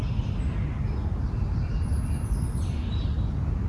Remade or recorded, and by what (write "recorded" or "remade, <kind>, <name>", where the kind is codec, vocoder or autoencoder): recorded